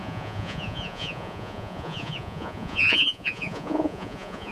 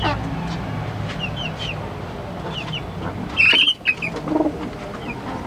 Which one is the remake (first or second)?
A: first